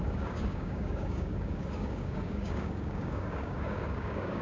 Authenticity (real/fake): fake